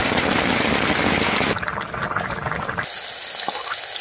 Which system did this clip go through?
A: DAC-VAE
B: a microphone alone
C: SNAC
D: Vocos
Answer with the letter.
B